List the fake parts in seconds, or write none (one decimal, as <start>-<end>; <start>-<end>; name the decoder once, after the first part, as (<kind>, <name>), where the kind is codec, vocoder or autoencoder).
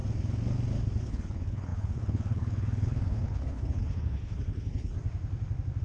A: 1.0-4.9 (codec, HILCodec)